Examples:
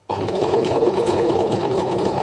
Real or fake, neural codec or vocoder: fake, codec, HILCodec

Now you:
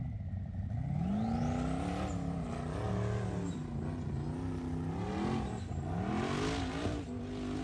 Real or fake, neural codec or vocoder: real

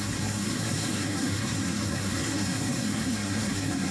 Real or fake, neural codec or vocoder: fake, codec, SNAC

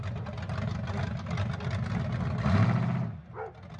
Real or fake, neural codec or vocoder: real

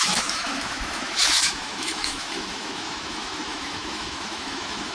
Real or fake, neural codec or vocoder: fake, autoencoder, DAC-VAE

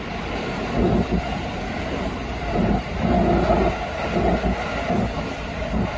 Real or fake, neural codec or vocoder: real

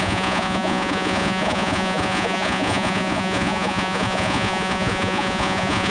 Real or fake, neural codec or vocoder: fake, vocoder, Vocos